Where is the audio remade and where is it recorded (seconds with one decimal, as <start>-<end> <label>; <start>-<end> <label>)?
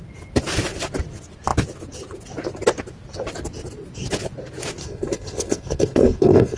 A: 0.0-4.8 recorded; 4.8-6.6 remade